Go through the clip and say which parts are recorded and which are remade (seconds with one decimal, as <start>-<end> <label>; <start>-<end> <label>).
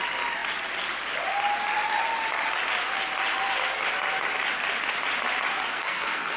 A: 0.0-5.7 recorded; 5.7-6.4 remade